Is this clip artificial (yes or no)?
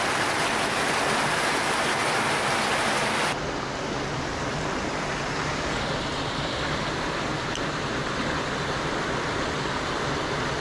no